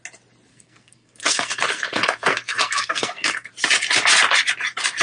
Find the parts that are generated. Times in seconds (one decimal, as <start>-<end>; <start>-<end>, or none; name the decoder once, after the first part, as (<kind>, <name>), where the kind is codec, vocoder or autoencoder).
0.5-3.5 (codec, SNAC)